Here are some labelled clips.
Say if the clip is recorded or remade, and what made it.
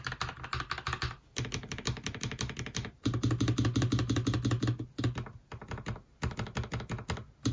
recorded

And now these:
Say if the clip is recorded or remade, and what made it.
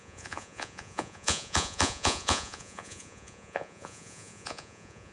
remade, vocoder, Vocos